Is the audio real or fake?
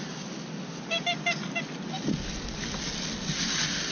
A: real